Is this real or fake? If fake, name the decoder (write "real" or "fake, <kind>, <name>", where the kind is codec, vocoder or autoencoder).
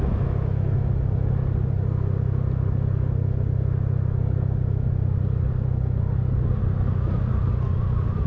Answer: real